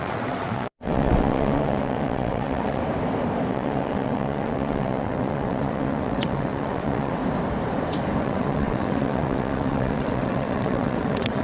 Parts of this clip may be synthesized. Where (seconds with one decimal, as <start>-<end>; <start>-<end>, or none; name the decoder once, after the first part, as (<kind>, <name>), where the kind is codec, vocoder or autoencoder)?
0.0-2.8 (vocoder, WaveNeXt); 3.5-7.2; 8.2-11.4